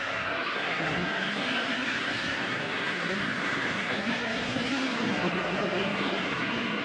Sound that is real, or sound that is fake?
fake